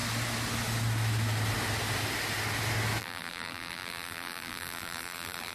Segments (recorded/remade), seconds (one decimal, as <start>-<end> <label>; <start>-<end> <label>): 0.0-3.0 recorded; 3.0-5.5 remade